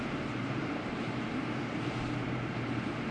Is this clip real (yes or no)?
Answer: no